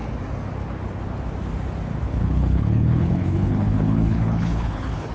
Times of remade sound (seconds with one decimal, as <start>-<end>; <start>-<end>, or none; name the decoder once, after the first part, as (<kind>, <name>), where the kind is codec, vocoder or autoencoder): 2.1-5.1 (codec, HILCodec)

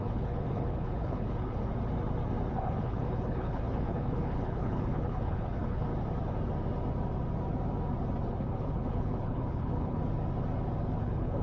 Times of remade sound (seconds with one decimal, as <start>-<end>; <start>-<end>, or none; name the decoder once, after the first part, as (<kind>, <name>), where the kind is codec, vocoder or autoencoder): 0.0-1.7 (codec, HILCodec); 2.5-5.9; 8.3-10.0; 11.0-11.4

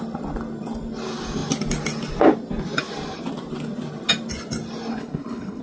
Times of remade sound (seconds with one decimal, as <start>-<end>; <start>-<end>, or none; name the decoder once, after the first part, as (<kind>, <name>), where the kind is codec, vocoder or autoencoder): 4.9-5.6 (codec, HILCodec)